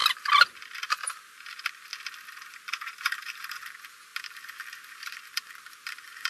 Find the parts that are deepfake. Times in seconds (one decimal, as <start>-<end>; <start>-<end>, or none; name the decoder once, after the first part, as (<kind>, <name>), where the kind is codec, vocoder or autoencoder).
1.0-1.9 (vocoder, BigVGAN v2); 2.5-6.3